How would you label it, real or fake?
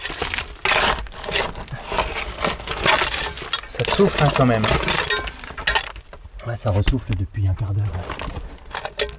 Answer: real